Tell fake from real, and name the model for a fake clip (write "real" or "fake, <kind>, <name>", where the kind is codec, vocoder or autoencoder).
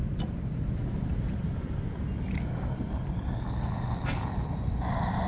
real